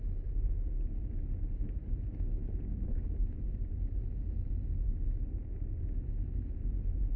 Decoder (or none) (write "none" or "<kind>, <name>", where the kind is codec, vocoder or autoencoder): none